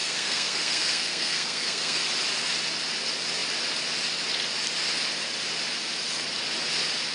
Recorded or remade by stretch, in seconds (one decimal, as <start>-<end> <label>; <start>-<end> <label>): 0.0-2.0 remade; 2.0-7.1 recorded